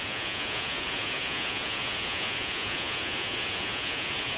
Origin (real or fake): fake